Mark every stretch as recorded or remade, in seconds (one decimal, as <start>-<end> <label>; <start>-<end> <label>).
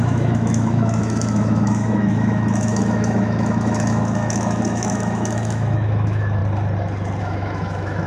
0.0-6.4 remade; 6.4-7.2 recorded; 7.2-8.1 remade